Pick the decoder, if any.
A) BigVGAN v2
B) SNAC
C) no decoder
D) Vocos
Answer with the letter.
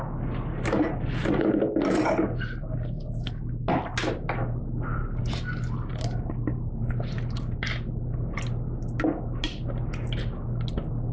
C